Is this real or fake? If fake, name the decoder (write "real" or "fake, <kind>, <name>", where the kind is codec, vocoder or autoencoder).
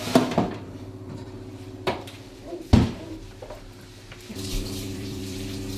fake, vocoder, BigVGAN v2